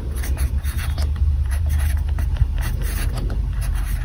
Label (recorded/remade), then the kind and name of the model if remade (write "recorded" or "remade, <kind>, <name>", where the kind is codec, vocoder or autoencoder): remade, vocoder, BigVGAN v2